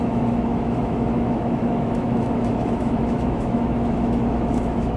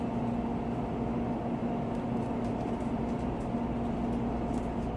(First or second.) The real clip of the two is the second